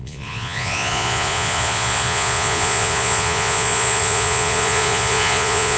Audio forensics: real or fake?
fake